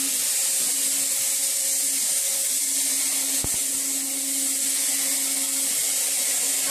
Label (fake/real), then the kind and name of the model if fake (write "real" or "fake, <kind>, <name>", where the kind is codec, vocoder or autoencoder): real